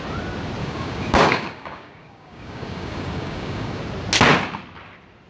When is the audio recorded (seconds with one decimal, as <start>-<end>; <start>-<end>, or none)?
0.0-0.6; 3.8-5.3